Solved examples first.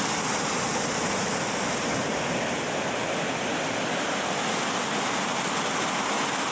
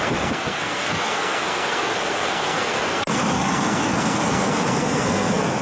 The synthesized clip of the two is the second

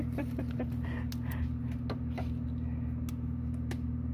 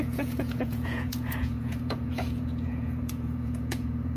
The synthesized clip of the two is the second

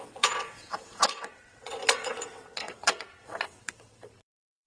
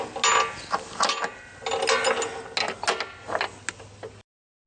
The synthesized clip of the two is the first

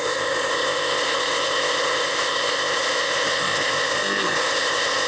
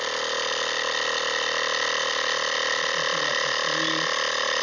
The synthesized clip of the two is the first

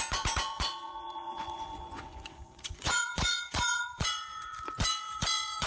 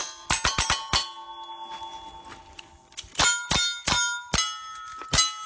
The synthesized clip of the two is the first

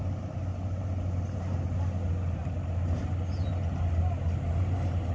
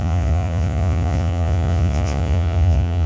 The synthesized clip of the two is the second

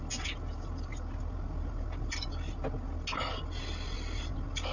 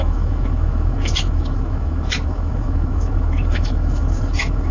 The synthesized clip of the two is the second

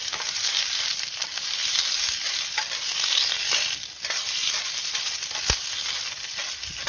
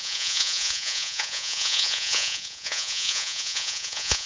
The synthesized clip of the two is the second